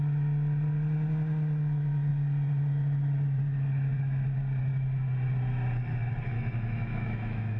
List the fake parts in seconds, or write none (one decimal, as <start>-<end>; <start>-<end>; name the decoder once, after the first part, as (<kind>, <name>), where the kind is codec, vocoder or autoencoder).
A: 6.3-7.6 (autoencoder, DAC-VAE)